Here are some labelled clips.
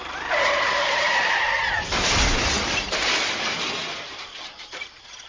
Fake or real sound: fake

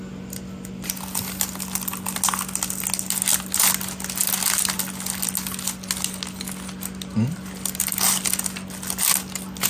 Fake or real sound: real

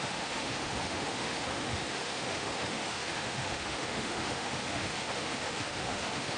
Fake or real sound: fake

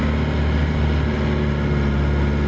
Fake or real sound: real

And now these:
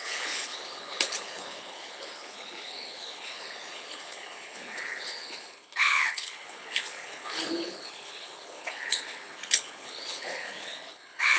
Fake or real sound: fake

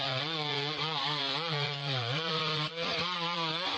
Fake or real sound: fake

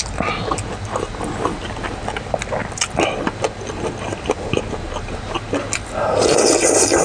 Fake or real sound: real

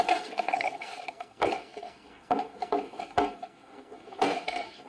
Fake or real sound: fake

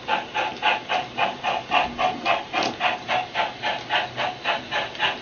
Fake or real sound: real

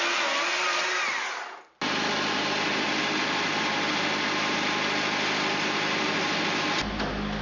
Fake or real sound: real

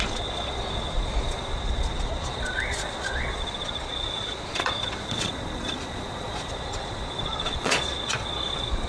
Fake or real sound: fake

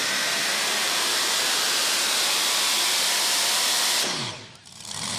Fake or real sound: fake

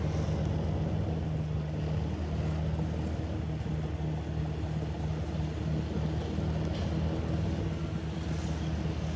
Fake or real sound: real